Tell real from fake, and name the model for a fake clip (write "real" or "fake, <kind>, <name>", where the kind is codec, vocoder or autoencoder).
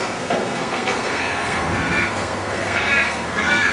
fake, codec, SNAC